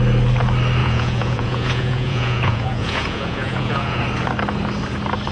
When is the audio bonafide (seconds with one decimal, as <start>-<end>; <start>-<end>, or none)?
0.0-0.8; 4.0-5.3